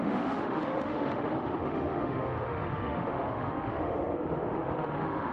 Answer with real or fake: fake